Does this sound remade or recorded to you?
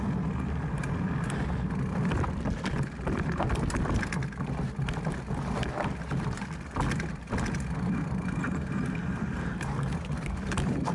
recorded